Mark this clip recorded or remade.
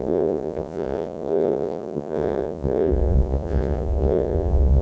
remade